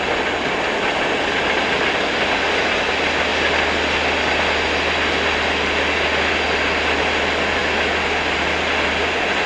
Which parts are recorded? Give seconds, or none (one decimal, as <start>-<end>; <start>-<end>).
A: 0.0-9.5